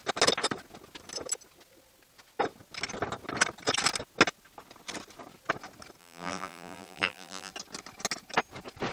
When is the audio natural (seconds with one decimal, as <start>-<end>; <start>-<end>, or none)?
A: 0.0-6.0; 7.5-8.9